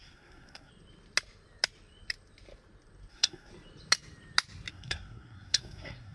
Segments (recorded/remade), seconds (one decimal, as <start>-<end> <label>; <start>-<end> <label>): 0.0-0.7 remade; 0.7-3.1 recorded; 3.1-3.5 remade; 3.5-4.7 recorded; 4.7-6.1 remade